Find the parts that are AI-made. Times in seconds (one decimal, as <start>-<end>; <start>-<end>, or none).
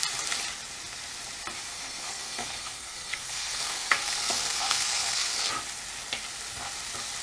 1.7-5.5